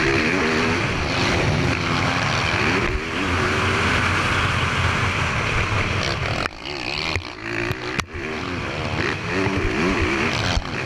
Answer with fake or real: real